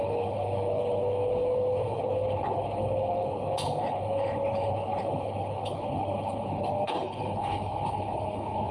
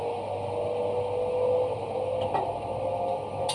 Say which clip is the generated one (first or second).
first